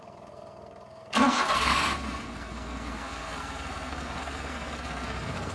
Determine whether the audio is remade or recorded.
remade